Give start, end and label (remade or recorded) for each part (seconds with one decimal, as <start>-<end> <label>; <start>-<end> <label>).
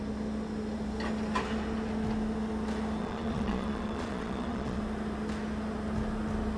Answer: 0.0-3.0 recorded; 3.0-4.8 remade; 4.8-6.6 recorded